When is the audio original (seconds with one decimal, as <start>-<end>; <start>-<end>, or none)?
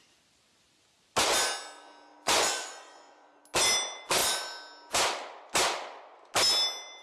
0.0-2.1; 3.4-7.0